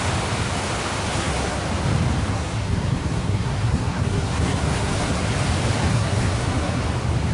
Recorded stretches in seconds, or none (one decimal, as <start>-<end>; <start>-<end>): 0.0-1.0; 1.6-2.3; 5.2-5.9; 6.8-7.3